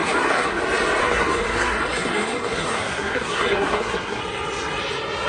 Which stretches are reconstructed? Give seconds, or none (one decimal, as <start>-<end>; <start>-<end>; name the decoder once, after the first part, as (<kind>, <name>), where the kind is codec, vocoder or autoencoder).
0.0-0.6 (codec, SNAC); 1.0-4.2